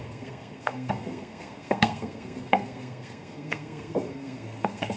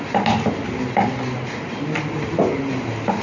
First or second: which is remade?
first